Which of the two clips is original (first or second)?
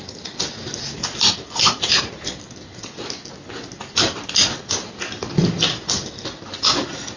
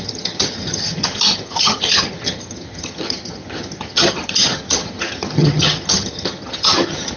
first